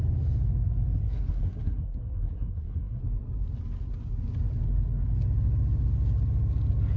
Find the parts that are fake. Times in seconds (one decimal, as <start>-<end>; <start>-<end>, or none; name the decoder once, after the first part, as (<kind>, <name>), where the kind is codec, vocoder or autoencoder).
1.0-3.0 (codec, SNAC)